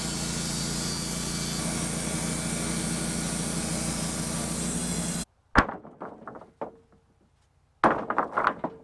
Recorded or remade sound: recorded